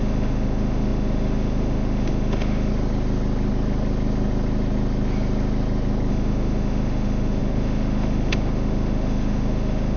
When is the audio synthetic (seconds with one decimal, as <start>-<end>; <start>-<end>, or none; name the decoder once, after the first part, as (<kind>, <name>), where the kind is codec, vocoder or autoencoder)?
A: 0.0-2.7 (autoencoder, DAC-VAE); 6.1-10.0